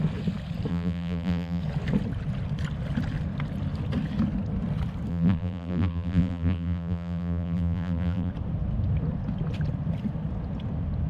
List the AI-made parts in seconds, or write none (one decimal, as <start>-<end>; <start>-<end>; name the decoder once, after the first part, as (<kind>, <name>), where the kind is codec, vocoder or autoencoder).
0.7-1.6 (vocoder, BigVGAN v2); 5.1-8.3